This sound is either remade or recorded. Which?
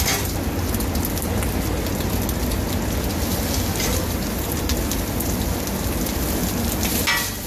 recorded